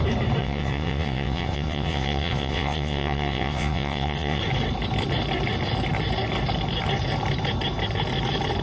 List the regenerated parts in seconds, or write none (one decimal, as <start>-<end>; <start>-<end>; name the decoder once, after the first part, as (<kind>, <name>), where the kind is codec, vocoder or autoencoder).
0.4-4.4 (vocoder, WaveNeXt)